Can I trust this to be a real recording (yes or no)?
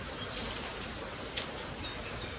yes